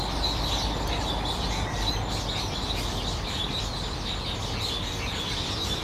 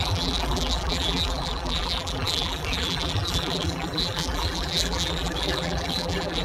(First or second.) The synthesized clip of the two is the second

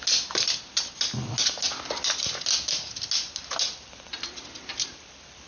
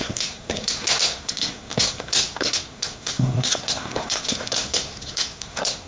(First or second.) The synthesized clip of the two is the second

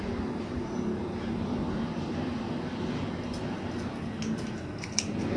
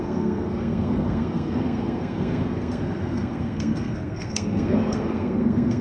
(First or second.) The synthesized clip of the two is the second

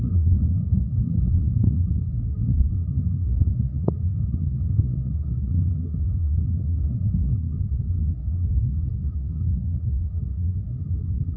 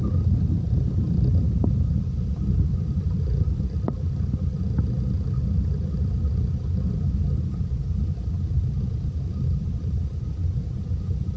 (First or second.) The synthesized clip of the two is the first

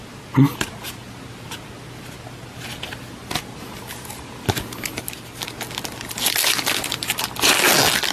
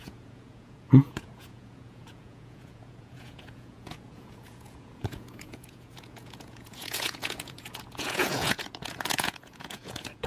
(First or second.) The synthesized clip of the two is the second